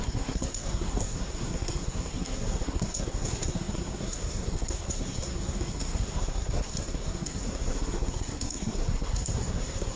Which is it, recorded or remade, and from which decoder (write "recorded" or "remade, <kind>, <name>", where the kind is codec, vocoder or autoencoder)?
remade, codec, SNAC